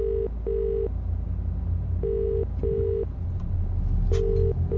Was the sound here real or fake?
real